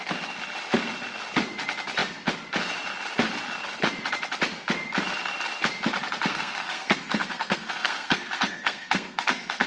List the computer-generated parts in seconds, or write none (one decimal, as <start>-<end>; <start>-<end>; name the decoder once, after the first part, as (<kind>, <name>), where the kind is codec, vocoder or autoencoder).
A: 6.3-9.7 (codec, SNAC)